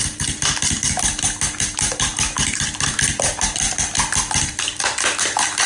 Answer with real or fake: real